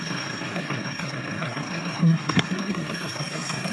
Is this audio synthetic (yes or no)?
yes